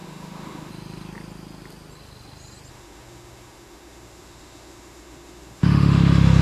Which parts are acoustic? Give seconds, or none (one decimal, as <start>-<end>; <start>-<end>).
0.7-2.7